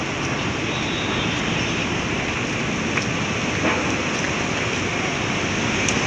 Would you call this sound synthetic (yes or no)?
no